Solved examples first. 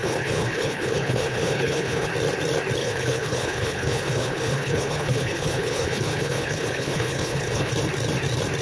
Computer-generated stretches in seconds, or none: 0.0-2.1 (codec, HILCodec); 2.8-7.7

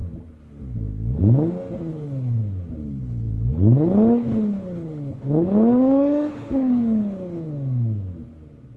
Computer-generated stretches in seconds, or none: 1.9-2.4 (codec, HILCodec); 2.8-7.5

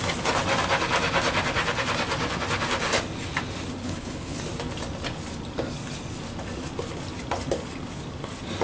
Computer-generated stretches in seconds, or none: 3.8-4.4 (codec, HILCodec)

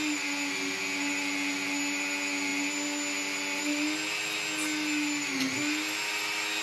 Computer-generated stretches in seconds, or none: none

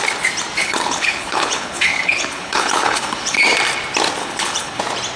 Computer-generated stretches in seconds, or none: 0.6-3.4 (codec, HILCodec); 4.2-4.8